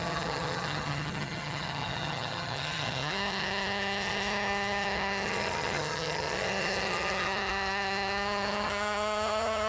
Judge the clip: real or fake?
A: fake